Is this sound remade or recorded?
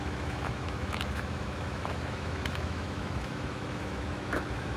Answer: remade